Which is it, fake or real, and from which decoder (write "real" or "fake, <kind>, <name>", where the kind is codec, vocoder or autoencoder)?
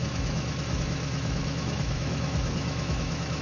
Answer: fake, autoencoder, DAC-VAE